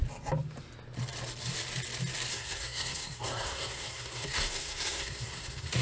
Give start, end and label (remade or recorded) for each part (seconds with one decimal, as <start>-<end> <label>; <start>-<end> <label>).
0.0-2.3 recorded; 2.3-5.8 remade